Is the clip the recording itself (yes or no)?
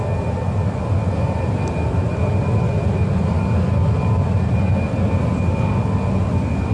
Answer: yes